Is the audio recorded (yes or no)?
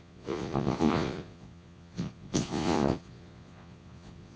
no